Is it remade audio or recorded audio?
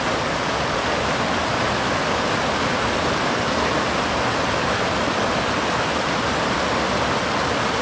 recorded